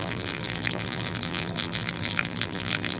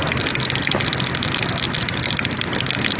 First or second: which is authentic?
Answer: second